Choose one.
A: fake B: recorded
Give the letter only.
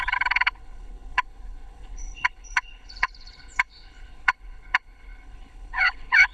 A